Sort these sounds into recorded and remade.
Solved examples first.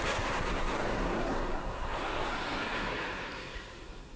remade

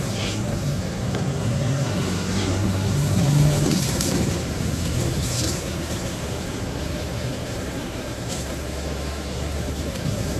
remade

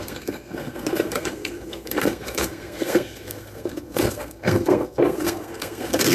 remade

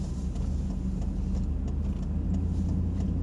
recorded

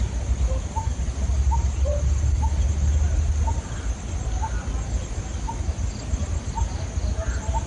recorded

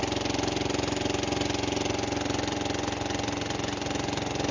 recorded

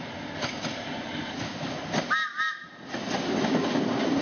recorded